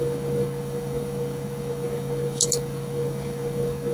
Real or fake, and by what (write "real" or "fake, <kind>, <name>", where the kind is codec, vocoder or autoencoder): fake, codec, DAC